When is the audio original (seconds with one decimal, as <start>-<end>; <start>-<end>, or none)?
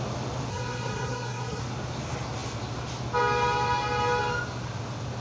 0.0-0.5; 1.6-5.2